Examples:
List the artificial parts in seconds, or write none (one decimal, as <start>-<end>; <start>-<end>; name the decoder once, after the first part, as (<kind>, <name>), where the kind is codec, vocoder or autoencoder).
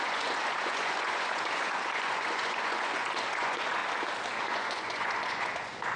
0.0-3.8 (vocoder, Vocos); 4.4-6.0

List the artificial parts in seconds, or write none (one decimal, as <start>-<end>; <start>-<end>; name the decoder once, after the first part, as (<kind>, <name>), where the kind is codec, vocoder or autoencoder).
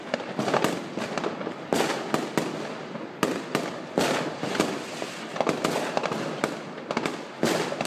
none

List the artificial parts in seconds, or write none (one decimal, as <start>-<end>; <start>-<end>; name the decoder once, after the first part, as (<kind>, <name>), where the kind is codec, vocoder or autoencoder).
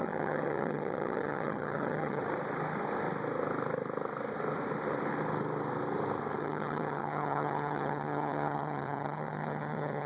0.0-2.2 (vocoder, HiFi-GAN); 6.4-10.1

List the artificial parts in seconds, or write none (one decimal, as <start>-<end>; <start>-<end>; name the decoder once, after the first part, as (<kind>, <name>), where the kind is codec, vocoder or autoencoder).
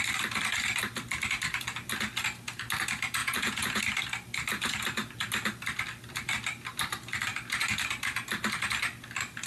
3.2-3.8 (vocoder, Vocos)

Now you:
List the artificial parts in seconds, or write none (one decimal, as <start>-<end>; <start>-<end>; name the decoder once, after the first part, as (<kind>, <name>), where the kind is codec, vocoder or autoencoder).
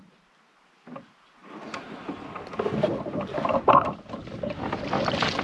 none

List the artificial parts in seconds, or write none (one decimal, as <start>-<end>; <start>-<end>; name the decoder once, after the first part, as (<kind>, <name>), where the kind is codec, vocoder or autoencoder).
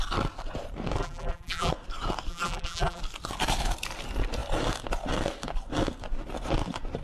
1.0-1.7 (vocoder, BigVGAN v2); 2.3-3.0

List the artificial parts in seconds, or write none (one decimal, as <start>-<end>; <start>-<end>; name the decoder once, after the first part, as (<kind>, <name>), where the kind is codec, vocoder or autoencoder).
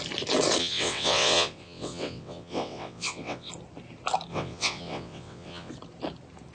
0.6-3.5 (vocoder, WaveNeXt); 4.3-5.7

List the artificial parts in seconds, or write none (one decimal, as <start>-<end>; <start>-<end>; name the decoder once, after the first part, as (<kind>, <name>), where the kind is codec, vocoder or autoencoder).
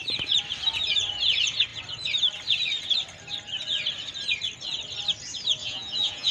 5.6-6.3 (vocoder, Vocos)